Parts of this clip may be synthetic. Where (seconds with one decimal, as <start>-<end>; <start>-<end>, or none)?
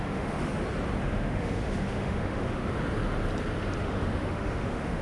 0.0-0.5; 1.0-2.6; 3.8-5.0